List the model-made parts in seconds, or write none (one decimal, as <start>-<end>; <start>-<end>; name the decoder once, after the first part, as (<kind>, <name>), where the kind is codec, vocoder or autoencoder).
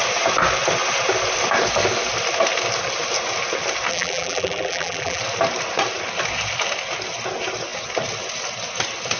3.9-5.2 (vocoder, BigVGAN v2)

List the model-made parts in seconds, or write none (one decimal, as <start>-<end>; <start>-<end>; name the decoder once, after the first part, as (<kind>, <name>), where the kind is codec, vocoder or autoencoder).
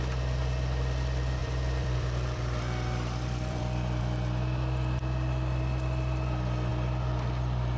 1.4-4.0 (vocoder, BigVGAN v2); 6.7-7.8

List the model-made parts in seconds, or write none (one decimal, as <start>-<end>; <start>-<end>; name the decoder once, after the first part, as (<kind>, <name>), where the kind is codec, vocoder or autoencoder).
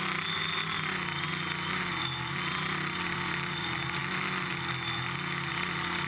0.0-0.4 (vocoder, BigVGAN v2); 2.0-4.0; 5.5-6.1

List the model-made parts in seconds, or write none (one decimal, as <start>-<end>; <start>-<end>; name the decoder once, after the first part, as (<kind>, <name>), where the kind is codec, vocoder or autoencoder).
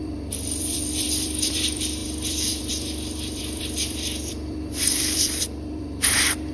0.0-6.5 (vocoder, BigVGAN v2)